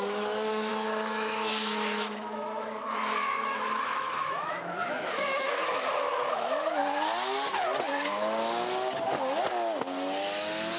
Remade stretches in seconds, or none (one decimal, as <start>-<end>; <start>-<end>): 0.0-6.8